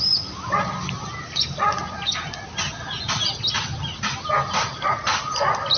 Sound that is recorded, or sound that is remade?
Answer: recorded